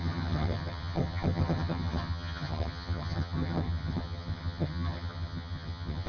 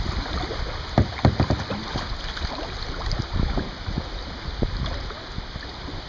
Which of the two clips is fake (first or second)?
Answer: first